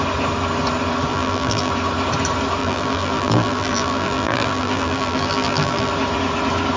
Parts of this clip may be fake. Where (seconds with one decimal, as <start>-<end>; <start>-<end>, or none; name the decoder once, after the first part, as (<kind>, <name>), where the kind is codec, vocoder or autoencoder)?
1.1-1.7 (vocoder, BigVGAN v2); 2.6-5.9